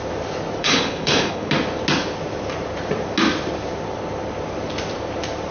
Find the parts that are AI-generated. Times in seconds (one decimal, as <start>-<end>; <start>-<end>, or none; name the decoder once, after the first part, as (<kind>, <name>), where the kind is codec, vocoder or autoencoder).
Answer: 0.6-1.5 (codec, HILCodec)